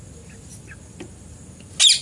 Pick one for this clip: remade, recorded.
recorded